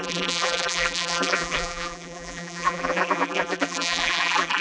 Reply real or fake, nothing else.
fake